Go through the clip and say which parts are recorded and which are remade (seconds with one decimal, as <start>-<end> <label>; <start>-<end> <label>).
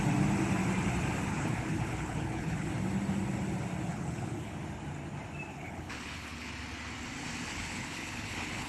0.0-1.3 recorded; 1.3-2.7 remade; 2.7-3.9 recorded; 3.9-4.5 remade; 4.5-5.5 recorded; 5.5-6.5 remade; 6.5-7.5 recorded; 7.5-8.7 remade